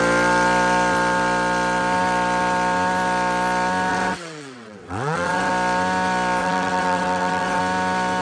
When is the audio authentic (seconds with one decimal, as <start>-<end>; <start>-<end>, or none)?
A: 0.0-3.9; 5.5-6.4; 7.6-8.2